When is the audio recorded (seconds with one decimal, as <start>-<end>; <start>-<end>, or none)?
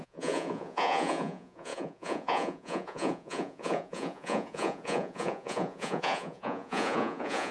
none